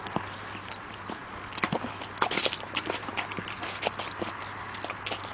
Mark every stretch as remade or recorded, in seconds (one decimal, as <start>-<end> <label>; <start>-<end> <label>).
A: 0.0-5.3 recorded